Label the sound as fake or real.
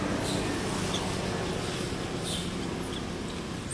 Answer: real